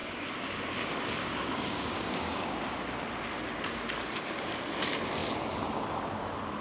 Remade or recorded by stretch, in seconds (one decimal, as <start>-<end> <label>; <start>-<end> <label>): 0.0-0.7 remade; 0.7-1.2 recorded; 1.2-2.6 remade; 2.6-6.6 recorded